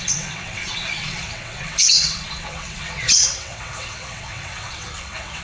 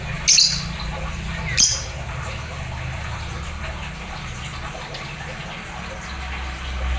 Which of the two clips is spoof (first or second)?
first